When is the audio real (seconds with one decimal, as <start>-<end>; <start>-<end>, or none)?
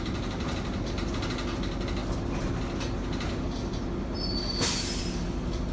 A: 0.0-5.7